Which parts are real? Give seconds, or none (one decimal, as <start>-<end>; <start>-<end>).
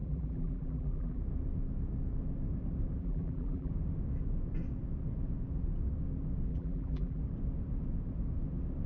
1.2-3.0; 3.7-6.5; 7.2-8.9